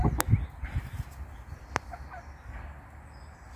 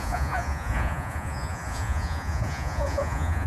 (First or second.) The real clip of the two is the first